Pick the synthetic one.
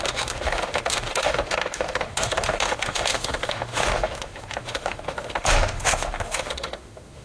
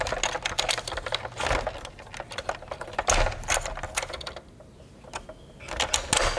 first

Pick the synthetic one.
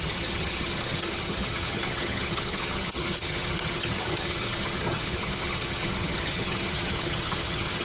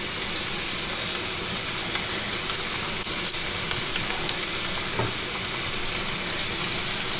first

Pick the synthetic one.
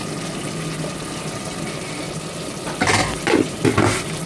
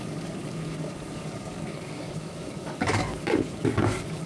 second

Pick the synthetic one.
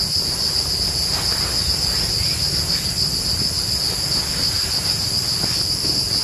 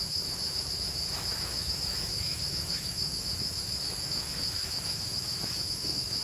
second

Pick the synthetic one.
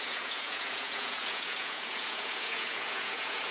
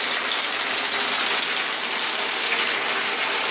first